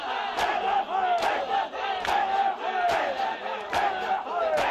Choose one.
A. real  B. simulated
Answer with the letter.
A